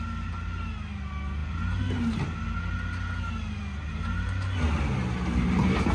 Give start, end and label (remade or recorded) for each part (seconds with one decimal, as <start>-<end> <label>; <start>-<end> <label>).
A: 0.0-5.9 recorded